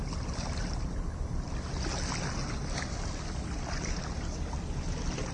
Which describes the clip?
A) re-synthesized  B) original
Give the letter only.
B